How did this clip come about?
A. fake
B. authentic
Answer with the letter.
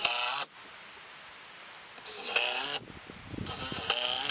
B